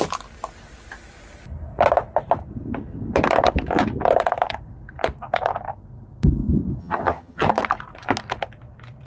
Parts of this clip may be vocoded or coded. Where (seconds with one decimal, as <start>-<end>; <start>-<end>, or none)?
6.8-7.5